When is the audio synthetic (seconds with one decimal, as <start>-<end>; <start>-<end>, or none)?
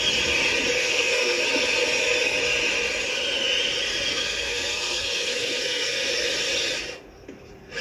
0.8-1.4; 4.1-6.1